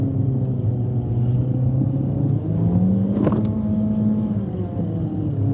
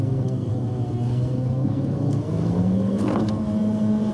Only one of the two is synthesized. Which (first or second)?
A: second